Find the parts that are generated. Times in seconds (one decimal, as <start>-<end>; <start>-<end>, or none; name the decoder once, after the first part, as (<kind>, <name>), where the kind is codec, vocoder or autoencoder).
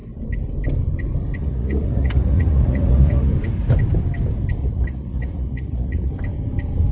1.4-3.3 (vocoder, Vocos); 4.6-6.1